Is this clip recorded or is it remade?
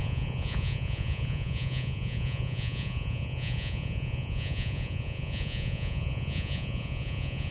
remade